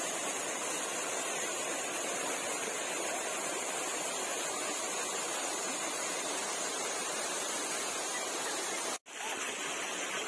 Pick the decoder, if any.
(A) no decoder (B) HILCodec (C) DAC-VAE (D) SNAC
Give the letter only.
A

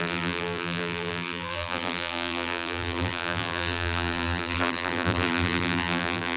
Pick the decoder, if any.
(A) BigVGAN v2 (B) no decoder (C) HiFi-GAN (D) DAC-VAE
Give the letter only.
A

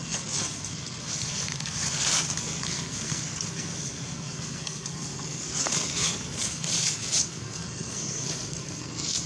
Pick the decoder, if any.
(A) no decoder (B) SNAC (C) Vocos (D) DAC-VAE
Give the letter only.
B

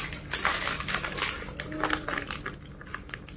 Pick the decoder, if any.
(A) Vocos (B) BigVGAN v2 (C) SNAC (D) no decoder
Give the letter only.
D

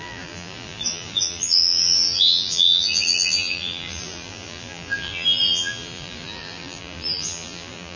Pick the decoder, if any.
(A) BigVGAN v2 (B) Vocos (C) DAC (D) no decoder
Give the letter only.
A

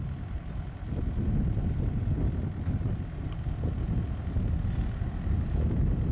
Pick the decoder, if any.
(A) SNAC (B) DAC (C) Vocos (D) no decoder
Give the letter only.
D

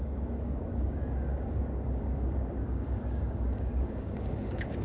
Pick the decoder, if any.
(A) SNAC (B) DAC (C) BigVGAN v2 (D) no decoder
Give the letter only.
B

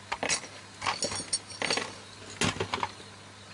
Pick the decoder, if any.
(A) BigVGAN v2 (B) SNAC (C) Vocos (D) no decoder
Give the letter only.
D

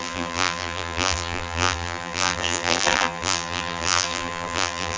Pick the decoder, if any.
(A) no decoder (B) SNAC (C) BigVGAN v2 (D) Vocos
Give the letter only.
C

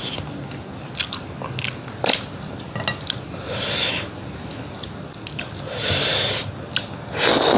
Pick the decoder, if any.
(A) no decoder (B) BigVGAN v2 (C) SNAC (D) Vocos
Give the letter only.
A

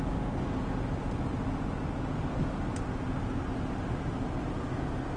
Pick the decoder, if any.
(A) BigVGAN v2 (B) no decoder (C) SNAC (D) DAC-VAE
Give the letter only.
B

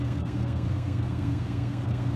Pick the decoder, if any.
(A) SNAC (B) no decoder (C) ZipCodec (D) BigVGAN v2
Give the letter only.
A